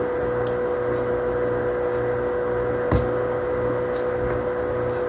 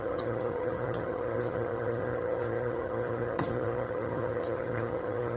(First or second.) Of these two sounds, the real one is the first